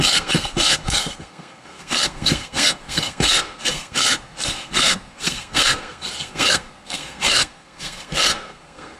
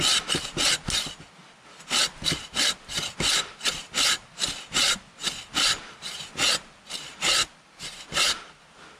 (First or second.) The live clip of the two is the second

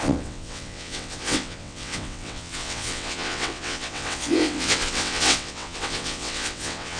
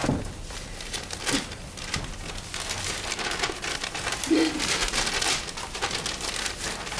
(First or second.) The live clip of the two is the second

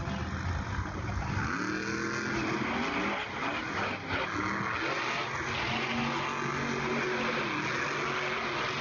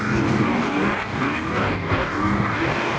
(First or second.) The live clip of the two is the first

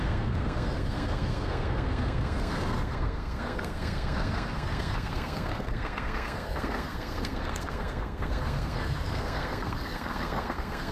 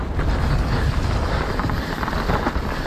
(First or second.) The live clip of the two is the second